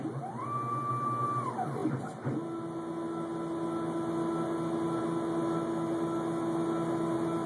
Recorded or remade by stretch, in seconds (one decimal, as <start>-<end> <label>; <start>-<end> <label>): 0.0-7.5 recorded